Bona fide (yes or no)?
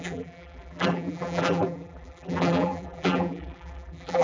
no